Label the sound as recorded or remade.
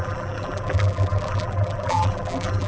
remade